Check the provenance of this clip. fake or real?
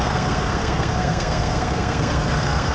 fake